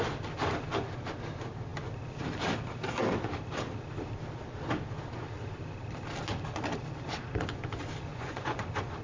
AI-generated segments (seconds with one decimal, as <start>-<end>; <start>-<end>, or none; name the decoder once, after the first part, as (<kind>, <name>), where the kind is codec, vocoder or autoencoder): 8.1-8.6 (vocoder, Vocos)